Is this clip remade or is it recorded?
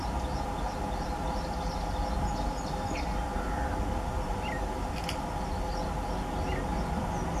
recorded